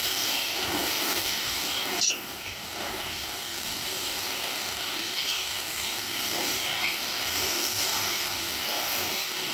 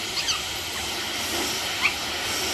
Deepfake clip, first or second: first